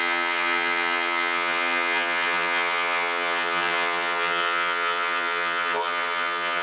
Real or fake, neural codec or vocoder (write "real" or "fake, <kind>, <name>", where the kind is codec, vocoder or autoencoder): fake, vocoder, HiFi-GAN